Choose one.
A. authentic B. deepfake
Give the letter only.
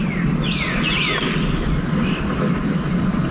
A